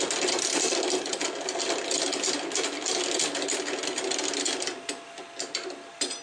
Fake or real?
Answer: real